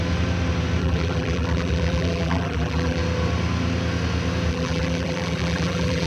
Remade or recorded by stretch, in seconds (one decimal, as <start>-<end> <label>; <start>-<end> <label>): 0.0-0.8 recorded; 0.8-3.0 remade; 3.0-4.5 recorded; 4.5-6.1 remade